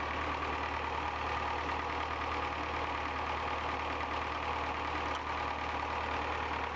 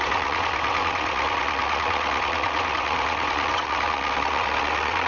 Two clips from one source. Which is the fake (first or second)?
second